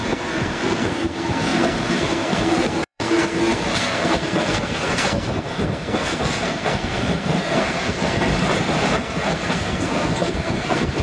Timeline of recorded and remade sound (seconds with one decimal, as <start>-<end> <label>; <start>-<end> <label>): 0.0-8.3 remade; 8.3-8.9 recorded; 8.9-11.0 remade